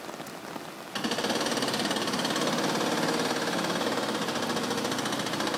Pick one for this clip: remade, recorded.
recorded